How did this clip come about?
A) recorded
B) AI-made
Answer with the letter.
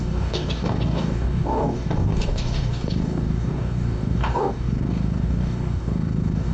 B